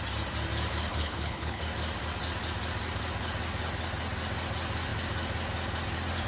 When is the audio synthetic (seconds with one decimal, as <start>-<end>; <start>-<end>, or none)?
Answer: 0.9-1.6